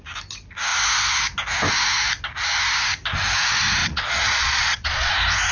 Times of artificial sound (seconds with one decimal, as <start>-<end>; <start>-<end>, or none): 3.8-5.1